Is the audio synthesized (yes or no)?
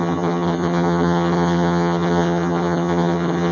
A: yes